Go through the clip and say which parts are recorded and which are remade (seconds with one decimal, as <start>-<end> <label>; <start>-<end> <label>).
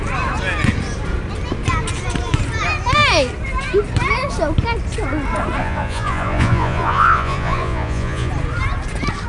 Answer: 0.0-5.6 recorded; 5.6-8.3 remade; 8.3-9.3 recorded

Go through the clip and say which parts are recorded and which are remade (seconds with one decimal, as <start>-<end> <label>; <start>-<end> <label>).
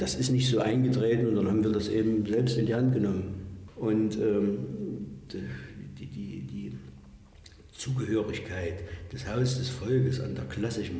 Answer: 0.0-1.7 recorded; 1.7-2.9 remade; 2.9-11.0 recorded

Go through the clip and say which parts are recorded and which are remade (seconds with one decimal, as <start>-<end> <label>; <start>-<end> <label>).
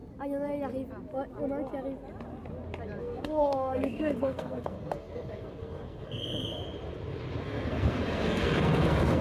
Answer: 0.0-3.0 recorded; 3.0-6.5 remade; 6.5-7.4 recorded; 7.4-9.2 remade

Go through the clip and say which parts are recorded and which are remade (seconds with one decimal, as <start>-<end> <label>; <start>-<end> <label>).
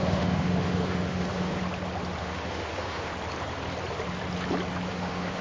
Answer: 0.0-1.6 remade; 1.6-2.2 recorded; 2.2-3.1 remade; 3.1-4.9 recorded; 4.9-5.4 remade